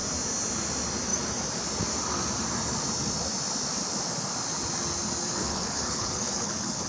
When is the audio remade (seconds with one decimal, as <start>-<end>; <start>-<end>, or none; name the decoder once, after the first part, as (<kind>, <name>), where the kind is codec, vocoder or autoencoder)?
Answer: 5.4-6.9 (codec, HILCodec)